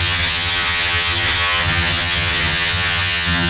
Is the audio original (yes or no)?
no